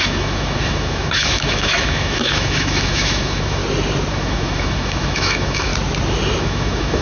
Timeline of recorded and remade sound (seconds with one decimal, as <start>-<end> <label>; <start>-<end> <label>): 0.0-3.6 remade; 3.6-4.1 recorded; 4.1-5.7 remade; 5.7-6.4 recorded; 6.4-7.0 remade